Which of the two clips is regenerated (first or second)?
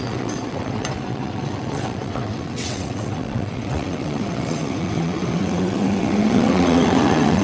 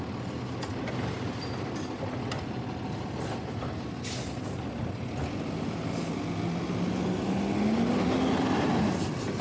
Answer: first